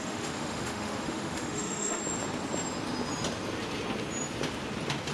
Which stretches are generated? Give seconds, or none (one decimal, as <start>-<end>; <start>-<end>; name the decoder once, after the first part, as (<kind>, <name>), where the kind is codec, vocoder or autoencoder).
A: 0.0-2.0 (autoencoder, DAC-VAE)